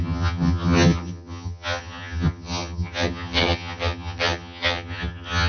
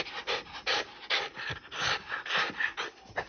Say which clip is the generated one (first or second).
first